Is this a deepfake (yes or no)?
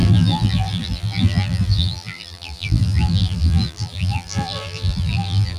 yes